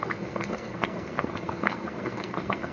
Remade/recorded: remade